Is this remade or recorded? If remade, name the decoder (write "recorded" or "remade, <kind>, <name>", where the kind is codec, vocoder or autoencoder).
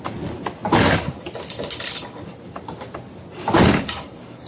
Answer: recorded